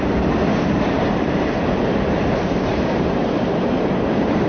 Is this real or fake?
fake